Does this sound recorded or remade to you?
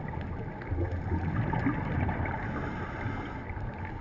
recorded